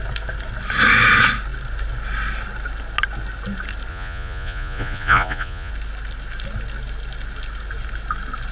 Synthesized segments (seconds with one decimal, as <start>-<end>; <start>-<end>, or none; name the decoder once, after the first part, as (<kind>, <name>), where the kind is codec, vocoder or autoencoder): 3.9-5.7 (vocoder, Vocos)